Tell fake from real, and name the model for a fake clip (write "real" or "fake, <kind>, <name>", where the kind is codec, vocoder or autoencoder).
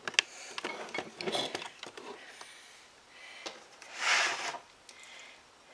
real